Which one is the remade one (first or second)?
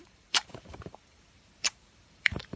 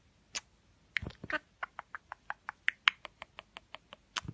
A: first